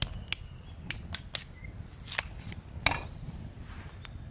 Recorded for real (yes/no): yes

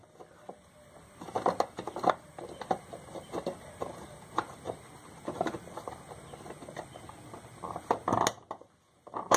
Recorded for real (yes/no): yes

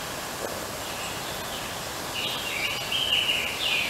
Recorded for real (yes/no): yes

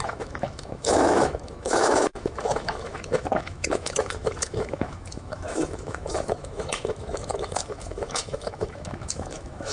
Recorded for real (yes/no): no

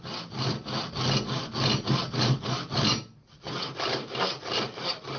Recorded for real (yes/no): yes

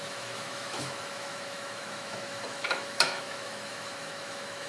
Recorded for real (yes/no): no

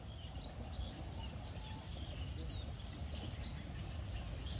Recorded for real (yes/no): yes